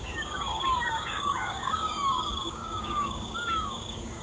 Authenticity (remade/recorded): remade